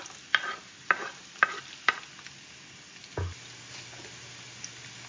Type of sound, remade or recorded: recorded